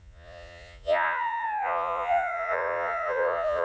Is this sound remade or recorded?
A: remade